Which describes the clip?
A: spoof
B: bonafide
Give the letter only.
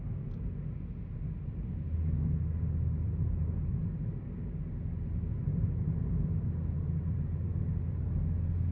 B